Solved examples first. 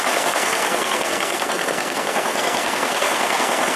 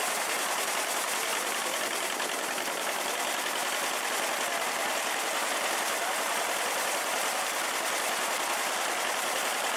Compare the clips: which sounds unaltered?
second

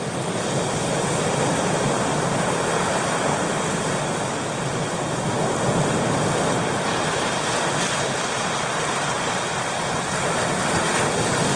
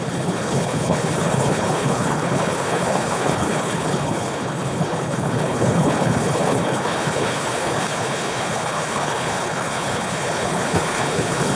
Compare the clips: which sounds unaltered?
first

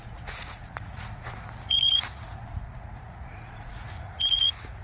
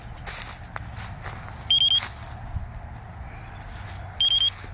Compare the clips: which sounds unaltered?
second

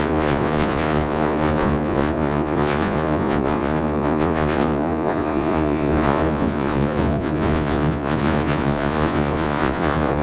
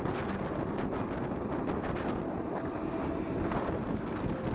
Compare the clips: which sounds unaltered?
second